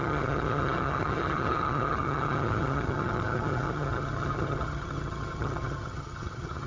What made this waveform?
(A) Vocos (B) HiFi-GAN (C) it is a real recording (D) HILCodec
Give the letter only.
B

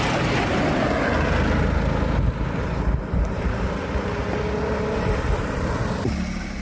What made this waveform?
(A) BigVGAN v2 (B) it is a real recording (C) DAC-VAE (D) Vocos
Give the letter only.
B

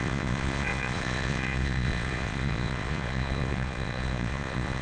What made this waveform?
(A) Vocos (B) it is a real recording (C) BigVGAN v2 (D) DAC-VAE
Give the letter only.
A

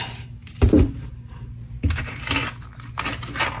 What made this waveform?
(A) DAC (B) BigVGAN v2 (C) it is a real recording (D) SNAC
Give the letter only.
C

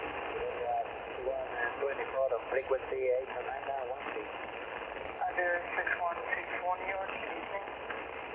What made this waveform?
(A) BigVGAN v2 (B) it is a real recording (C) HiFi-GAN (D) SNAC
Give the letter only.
B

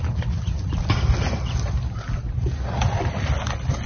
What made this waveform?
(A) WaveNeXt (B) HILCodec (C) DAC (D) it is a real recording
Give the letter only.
D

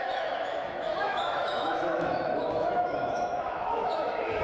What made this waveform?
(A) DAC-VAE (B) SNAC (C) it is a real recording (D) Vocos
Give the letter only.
A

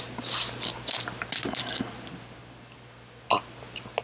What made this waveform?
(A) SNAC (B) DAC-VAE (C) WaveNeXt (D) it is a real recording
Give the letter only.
D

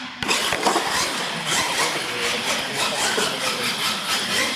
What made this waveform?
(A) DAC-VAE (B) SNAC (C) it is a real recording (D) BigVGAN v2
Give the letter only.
C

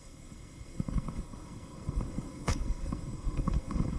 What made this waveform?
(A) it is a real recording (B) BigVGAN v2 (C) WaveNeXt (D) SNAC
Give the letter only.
D